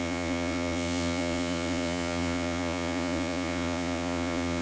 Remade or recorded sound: remade